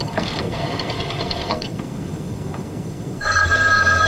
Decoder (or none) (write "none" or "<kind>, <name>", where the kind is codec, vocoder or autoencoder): codec, SNAC